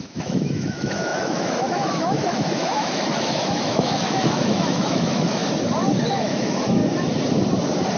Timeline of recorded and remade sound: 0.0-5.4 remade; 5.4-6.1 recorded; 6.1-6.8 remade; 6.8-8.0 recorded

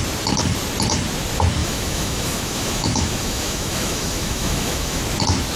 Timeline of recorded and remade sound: 0.0-1.6 recorded; 1.6-5.0 remade; 5.0-5.6 recorded